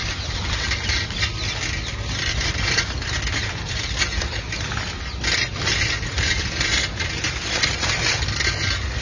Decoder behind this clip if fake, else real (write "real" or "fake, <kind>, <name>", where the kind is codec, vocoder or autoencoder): real